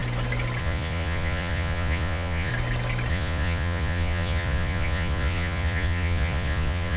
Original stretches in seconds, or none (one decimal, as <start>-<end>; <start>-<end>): 0.0-0.6; 2.5-3.1